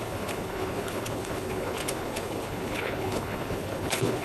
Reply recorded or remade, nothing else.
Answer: remade